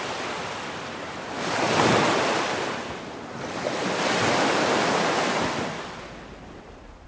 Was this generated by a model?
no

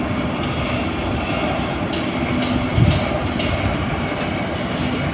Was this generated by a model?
no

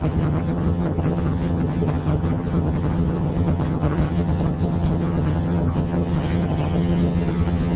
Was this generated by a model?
yes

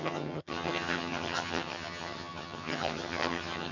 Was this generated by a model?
yes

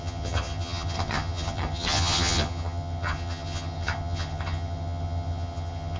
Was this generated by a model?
yes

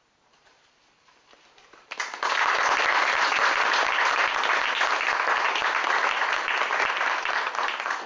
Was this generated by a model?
no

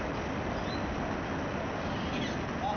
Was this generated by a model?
no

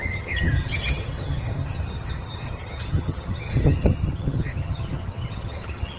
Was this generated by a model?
yes